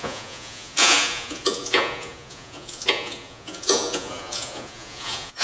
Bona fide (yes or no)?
no